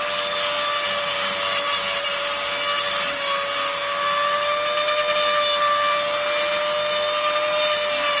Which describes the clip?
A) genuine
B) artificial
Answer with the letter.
A